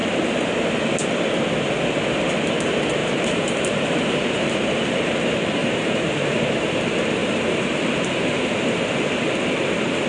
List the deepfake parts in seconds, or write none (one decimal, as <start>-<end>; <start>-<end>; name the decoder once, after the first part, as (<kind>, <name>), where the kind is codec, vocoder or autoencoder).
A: 3.0-5.1 (vocoder, BigVGAN v2); 5.6-6.4; 7.2-8.5